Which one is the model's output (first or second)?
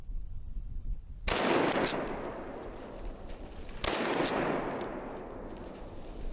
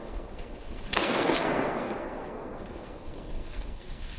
second